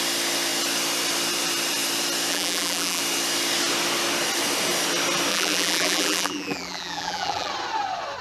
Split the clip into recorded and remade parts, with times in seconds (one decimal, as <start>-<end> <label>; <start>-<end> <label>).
0.0-2.3 recorded; 2.3-3.0 remade; 3.0-5.3 recorded; 5.3-7.5 remade; 7.5-8.2 recorded